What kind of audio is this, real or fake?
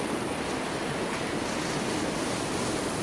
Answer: real